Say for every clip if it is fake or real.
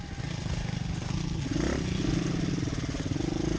real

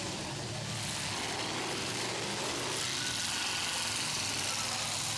real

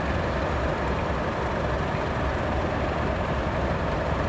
real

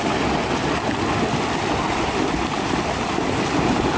real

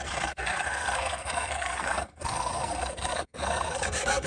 fake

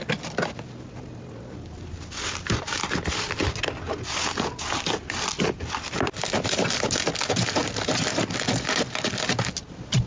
real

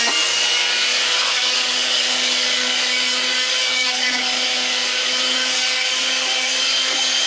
fake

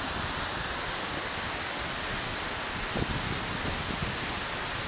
real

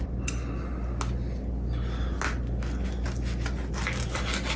real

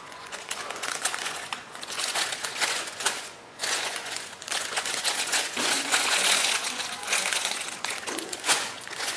fake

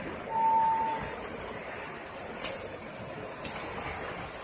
real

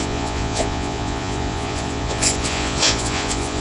fake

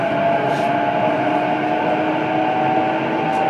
real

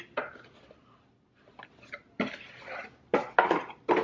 real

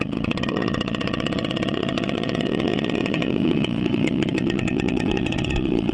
fake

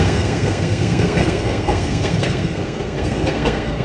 fake